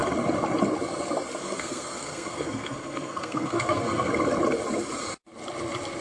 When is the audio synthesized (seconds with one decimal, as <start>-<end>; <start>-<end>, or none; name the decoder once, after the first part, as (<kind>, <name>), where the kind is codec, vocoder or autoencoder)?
1.4-4.1 (codec, SNAC)